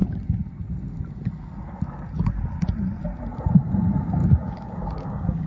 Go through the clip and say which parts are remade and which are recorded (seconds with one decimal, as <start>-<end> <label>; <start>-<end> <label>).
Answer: 0.0-4.2 recorded; 4.2-5.5 remade